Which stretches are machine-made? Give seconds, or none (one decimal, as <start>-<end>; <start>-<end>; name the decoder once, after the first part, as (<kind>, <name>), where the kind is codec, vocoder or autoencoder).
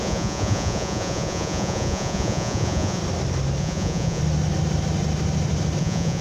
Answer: 0.0-3.0 (vocoder, Vocos); 3.6-4.2; 5.8-6.2